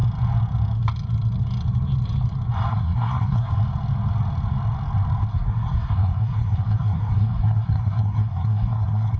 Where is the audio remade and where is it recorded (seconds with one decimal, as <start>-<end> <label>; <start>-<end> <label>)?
0.0-2.7 recorded; 2.7-3.5 remade; 3.5-5.3 recorded; 5.3-9.2 remade